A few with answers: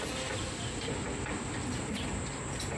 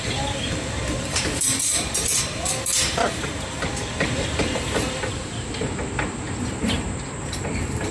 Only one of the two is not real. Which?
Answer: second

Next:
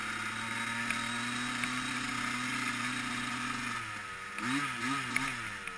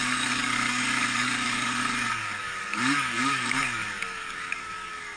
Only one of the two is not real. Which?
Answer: second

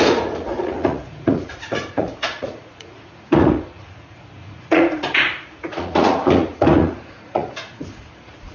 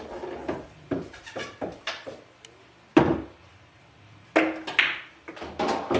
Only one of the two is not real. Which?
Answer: first